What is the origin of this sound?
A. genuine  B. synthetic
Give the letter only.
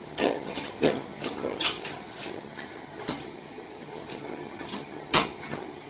B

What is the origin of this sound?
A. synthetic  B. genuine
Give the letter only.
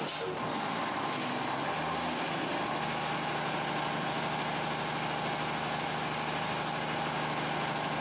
B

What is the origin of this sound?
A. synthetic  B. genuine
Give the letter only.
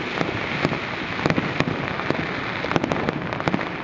B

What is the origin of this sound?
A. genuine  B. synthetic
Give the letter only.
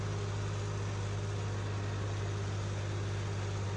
A